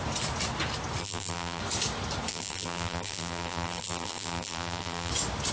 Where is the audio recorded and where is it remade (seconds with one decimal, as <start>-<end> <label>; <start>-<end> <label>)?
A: 0.0-1.0 recorded; 1.0-1.6 remade; 1.6-2.3 recorded; 2.3-5.1 remade; 5.1-5.5 recorded